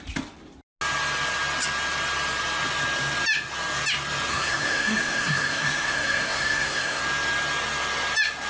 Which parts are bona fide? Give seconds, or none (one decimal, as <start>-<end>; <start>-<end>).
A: 0.0-4.3; 7.0-8.5